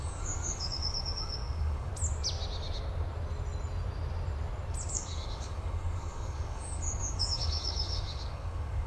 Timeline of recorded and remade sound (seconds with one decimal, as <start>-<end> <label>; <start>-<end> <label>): 0.0-1.9 remade; 1.9-4.9 recorded; 4.9-8.9 remade

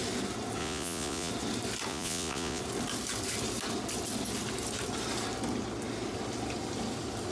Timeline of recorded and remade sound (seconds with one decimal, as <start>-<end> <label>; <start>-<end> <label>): 0.0-0.6 recorded; 0.6-1.3 remade; 1.3-1.9 recorded; 1.9-2.6 remade; 2.6-7.3 recorded

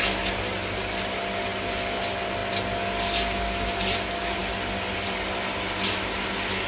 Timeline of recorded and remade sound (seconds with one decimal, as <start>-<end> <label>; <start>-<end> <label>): 0.0-6.7 recorded

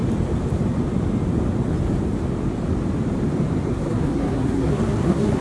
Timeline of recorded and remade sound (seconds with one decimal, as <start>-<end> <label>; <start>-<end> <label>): 0.0-3.7 recorded; 3.7-5.4 remade

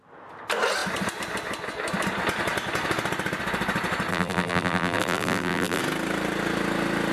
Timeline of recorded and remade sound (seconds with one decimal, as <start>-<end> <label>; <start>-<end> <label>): 0.0-4.1 recorded; 4.1-5.8 remade; 5.8-7.1 recorded

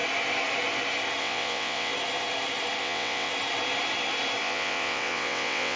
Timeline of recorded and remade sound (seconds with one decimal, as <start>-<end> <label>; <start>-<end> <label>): 0.0-1.2 recorded; 1.2-1.9 remade; 1.9-2.8 recorded; 2.8-3.3 remade; 3.3-4.4 recorded; 4.4-5.8 remade

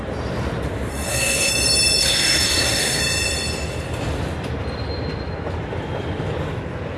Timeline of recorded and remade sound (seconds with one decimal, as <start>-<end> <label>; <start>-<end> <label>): 0.0-0.9 recorded; 0.9-1.5 remade; 1.5-2.0 recorded; 2.0-3.0 remade; 3.0-7.0 recorded